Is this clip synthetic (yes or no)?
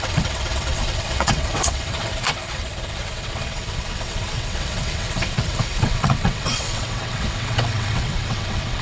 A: yes